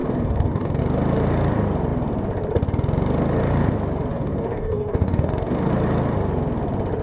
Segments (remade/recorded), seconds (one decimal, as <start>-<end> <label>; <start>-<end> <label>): 0.0-0.8 remade; 0.8-4.1 recorded; 4.1-5.7 remade; 5.7-7.0 recorded